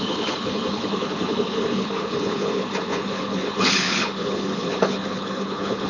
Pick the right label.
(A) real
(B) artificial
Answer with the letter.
B